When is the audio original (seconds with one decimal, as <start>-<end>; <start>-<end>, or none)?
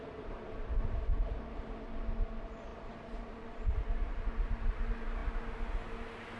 0.0-2.7; 4.2-6.4